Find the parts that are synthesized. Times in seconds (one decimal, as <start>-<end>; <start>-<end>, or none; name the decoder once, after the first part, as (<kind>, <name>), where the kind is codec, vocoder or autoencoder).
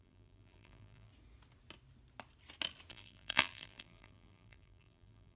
0.0-1.1 (vocoder, BigVGAN v2); 2.9-5.4